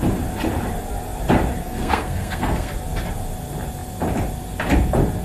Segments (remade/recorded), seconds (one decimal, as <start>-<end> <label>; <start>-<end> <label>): 0.0-1.6 recorded; 1.6-2.7 remade; 2.7-5.2 recorded